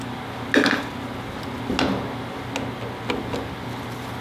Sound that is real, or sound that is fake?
real